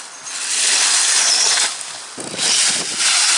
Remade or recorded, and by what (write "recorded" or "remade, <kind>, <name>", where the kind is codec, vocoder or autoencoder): recorded